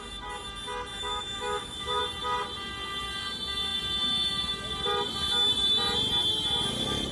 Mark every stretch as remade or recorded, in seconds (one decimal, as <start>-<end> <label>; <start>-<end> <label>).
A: 0.0-0.9 recorded; 0.9-2.0 remade; 2.0-7.1 recorded